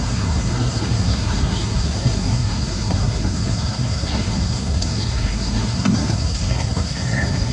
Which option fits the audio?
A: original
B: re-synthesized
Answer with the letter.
B